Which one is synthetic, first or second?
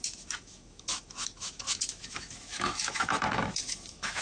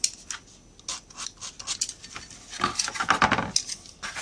first